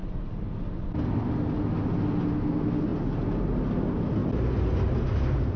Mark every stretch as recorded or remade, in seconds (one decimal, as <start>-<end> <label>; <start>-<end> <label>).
0.0-1.4 remade; 1.4-5.6 recorded